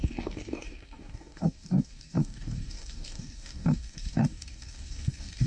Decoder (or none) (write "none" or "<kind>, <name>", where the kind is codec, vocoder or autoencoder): codec, DAC